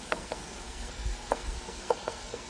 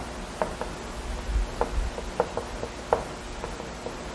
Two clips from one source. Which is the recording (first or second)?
second